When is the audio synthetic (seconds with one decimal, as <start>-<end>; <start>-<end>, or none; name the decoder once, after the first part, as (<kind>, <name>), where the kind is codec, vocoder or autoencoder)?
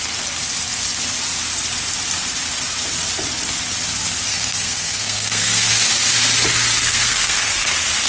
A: 4.3-5.9 (codec, SNAC); 6.8-7.5